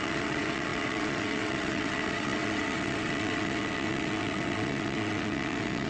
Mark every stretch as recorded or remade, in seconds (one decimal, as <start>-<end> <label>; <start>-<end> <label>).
0.0-5.9 remade